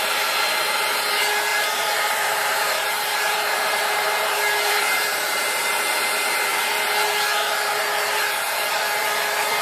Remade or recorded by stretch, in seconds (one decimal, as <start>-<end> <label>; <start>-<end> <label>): 0.0-1.5 recorded; 1.5-5.8 remade; 5.8-9.6 recorded